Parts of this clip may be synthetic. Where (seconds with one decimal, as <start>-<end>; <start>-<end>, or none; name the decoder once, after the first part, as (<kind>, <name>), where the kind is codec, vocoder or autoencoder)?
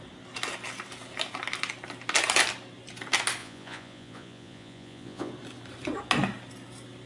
3.4-5.3 (vocoder, Vocos)